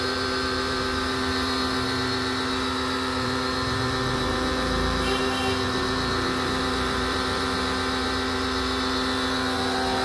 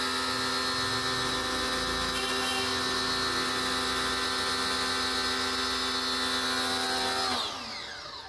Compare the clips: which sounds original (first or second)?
second